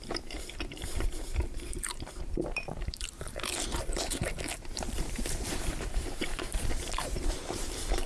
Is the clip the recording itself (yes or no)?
no